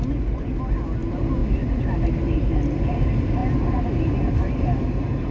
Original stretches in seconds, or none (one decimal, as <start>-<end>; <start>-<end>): 0.0-5.3